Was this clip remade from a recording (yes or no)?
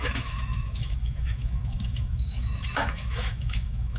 yes